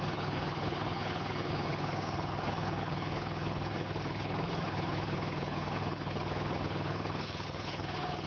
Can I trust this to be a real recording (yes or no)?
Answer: no